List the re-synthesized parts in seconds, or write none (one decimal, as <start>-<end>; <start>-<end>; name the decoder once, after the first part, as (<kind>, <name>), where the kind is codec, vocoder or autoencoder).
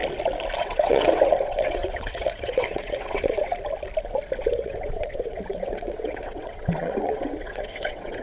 0.6-3.5 (vocoder, WaveNeXt); 4.4-8.2